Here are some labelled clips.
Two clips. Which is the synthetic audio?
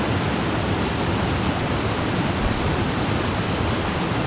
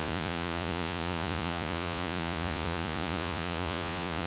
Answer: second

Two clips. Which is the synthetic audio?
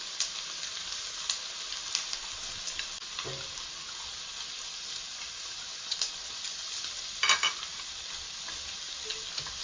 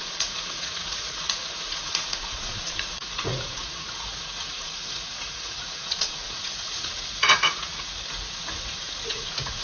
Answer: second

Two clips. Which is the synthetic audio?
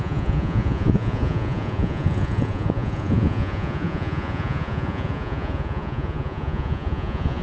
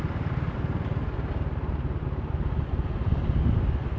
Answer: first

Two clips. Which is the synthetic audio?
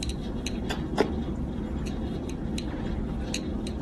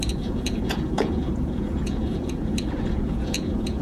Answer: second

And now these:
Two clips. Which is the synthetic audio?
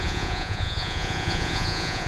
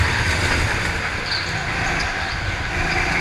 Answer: first